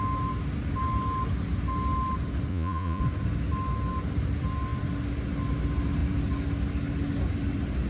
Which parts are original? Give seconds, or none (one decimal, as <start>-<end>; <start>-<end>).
0.0-2.5; 3.0-7.9